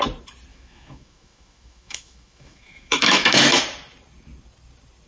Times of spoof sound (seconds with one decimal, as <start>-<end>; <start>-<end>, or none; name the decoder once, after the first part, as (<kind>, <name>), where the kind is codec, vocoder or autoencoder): 0.5-3.6 (autoencoder, DAC-VAE)